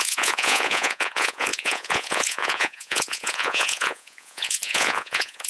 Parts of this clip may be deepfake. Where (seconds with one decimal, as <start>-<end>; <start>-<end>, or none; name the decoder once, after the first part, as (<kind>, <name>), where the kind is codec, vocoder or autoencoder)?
0.0-5.5 (vocoder, Vocos)